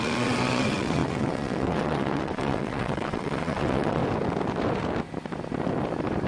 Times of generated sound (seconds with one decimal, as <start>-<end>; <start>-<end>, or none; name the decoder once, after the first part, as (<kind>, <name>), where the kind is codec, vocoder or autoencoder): 0.0-4.0 (vocoder, WaveNeXt)